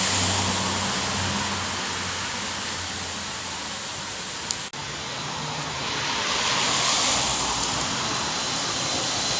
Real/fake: real